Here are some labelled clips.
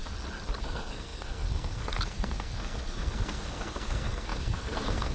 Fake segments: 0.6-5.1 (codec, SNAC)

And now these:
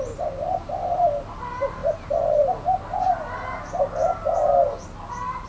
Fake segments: none

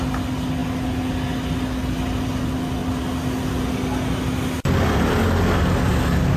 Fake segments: none

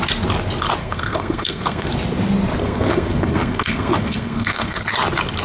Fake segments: 0.8-1.9 (codec, SNAC); 2.6-4.8